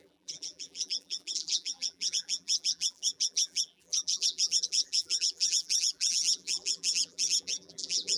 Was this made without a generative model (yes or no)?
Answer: no